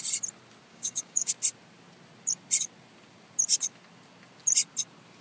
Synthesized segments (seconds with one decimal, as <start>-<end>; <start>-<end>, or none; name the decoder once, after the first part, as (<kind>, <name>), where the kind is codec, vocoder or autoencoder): 0.7-1.3 (codec, DAC)